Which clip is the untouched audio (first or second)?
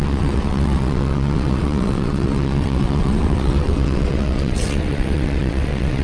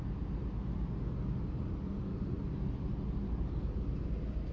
second